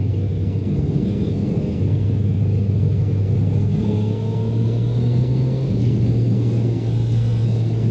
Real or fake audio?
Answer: fake